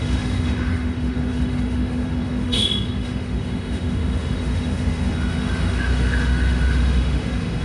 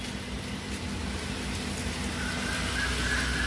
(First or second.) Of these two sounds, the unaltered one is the second